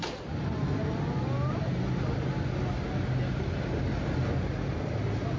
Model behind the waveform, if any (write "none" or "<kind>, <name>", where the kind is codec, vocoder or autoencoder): none